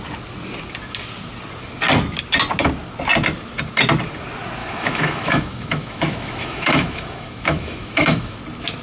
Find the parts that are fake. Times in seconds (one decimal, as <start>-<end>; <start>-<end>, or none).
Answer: 4.6-8.4